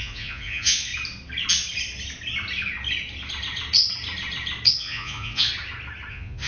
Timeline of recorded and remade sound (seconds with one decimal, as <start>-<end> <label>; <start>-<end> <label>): 0.0-0.9 remade; 0.9-4.7 recorded; 4.7-5.5 remade; 5.5-6.1 recorded; 6.1-6.5 remade